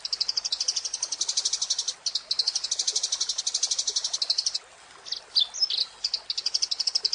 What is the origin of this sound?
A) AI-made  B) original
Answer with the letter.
B